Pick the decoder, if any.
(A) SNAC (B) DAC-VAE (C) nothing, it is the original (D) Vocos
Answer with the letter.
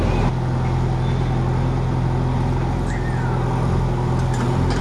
C